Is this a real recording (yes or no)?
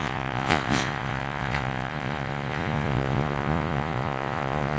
no